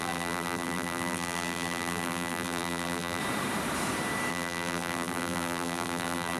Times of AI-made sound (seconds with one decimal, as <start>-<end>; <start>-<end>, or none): 0.0-3.2; 4.3-6.4